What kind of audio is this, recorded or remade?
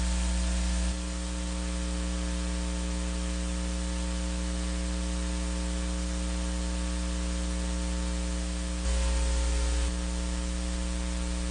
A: recorded